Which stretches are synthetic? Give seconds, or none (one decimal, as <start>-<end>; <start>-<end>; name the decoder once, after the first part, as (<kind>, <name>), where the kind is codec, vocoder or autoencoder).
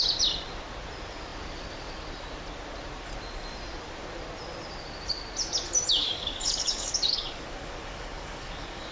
6.0-8.9 (codec, DAC)